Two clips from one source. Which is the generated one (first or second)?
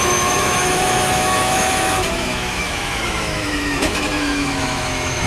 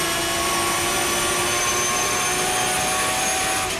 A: first